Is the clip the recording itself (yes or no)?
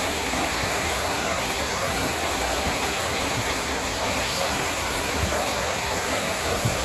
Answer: no